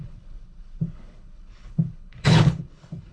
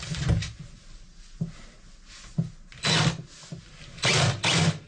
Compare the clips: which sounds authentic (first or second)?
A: second